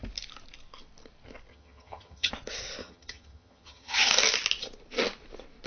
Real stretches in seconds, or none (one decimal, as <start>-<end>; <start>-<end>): 0.0-1.5; 2.3-2.8; 4.1-5.7